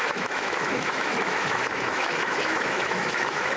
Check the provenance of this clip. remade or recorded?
remade